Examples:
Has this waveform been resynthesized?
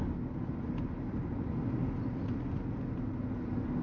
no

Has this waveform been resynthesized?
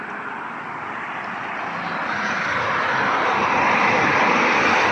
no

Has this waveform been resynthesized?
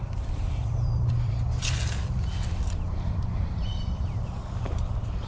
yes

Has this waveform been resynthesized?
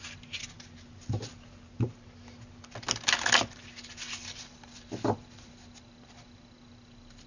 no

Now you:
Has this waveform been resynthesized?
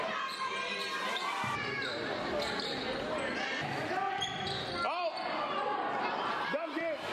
yes